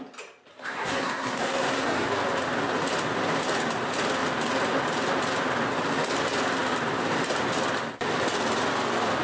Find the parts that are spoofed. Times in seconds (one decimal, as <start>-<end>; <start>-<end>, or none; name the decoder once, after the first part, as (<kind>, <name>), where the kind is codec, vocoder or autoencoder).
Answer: 0.5-2.1 (codec, SNAC)